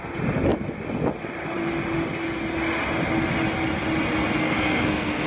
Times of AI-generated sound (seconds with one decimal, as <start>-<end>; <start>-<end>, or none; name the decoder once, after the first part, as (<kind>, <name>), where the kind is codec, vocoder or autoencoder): 4.4-5.3 (codec, SNAC)